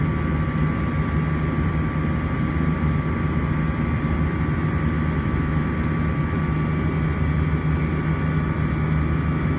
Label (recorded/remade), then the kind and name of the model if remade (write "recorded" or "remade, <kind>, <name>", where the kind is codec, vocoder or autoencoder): recorded